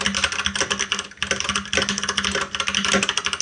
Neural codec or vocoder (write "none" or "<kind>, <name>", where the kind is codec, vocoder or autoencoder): none